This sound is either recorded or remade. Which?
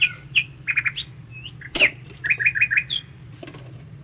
recorded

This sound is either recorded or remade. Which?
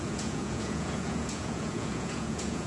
remade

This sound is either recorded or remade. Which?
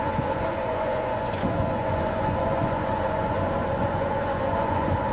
remade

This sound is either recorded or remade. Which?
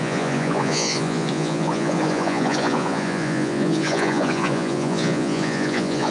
remade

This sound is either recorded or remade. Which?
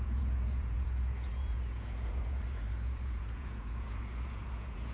remade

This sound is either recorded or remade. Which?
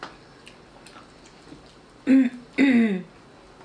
recorded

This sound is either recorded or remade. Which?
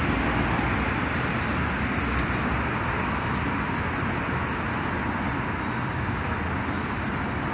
recorded